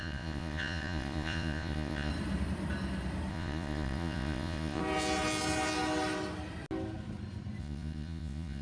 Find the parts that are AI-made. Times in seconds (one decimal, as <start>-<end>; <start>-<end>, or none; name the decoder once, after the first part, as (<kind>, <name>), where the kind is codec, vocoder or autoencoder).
0.0-2.1 (vocoder, Vocos); 3.3-4.8; 7.6-8.6